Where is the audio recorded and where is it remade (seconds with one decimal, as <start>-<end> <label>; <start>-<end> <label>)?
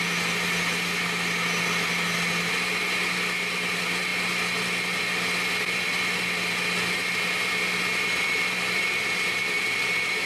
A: 0.0-10.3 recorded